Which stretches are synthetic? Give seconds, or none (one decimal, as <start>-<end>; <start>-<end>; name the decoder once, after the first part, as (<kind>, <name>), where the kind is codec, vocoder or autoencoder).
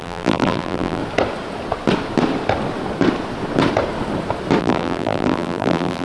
0.0-1.0 (vocoder, BigVGAN v2); 4.6-6.0